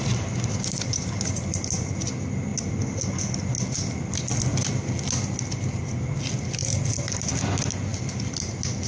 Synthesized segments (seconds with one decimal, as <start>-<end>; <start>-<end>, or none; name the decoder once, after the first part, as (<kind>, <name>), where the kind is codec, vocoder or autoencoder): none